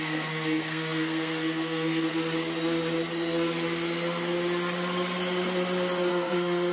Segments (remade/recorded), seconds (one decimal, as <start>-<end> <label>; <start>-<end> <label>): 0.0-2.1 remade; 2.1-6.1 recorded; 6.1-6.7 remade